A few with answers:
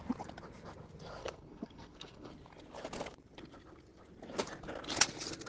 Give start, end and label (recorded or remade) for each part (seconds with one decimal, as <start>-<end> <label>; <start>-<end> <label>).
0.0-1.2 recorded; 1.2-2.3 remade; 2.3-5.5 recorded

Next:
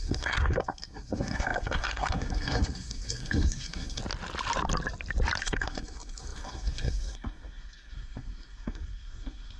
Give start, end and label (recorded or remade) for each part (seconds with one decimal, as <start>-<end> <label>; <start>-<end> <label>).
0.0-4.0 remade; 4.0-5.4 recorded; 5.4-9.6 remade

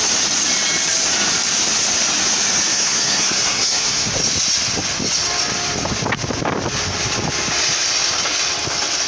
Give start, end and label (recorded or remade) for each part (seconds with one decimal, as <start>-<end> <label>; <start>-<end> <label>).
0.0-2.7 recorded; 2.7-4.1 remade; 4.1-9.1 recorded

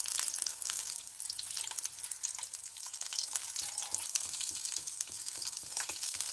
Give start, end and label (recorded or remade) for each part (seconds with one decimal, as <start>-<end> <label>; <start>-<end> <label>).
0.0-0.5 recorded; 0.5-1.1 remade; 1.1-2.6 recorded; 2.6-3.5 remade; 3.5-4.1 recorded; 4.1-6.3 remade

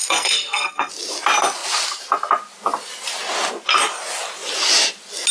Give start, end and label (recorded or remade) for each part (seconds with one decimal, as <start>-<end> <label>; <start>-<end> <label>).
0.0-0.9 remade; 0.9-5.3 recorded